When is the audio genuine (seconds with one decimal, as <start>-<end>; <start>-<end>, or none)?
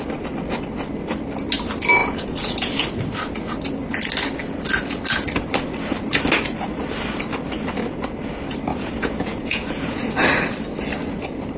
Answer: 0.0-2.0; 2.7-8.7; 10.2-11.6